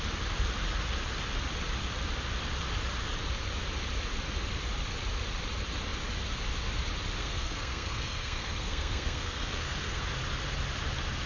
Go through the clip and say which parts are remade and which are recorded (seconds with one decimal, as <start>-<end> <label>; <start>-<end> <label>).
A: 0.0-7.2 recorded; 7.2-10.0 remade; 10.0-11.3 recorded